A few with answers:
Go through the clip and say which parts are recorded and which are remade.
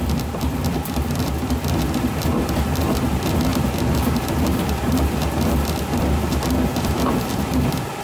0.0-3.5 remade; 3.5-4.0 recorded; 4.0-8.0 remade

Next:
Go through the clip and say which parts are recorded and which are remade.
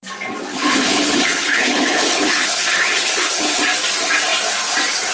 0.0-0.5 recorded; 0.5-3.6 remade; 3.6-5.1 recorded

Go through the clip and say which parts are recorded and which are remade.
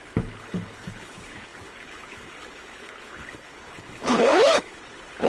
0.0-5.3 remade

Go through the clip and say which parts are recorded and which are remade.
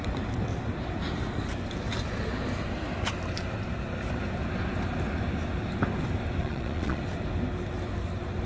0.0-6.4 recorded; 6.4-7.0 remade; 7.0-8.5 recorded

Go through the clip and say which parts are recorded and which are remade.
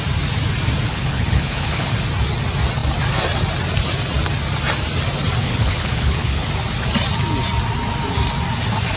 0.0-0.9 recorded; 0.9-1.9 remade; 1.9-5.4 recorded; 5.4-6.5 remade; 6.5-9.0 recorded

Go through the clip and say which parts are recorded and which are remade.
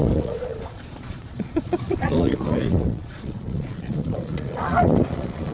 0.0-5.5 remade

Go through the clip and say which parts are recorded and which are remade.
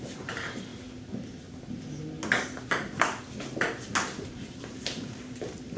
0.0-0.7 remade; 0.7-4.2 recorded; 4.2-5.8 remade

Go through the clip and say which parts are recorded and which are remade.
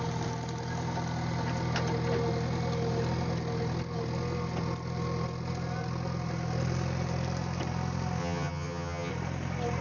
0.0-8.2 recorded; 8.2-9.1 remade; 9.1-9.8 recorded